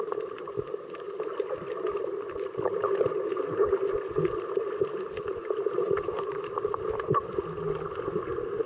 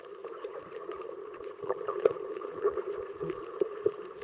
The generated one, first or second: second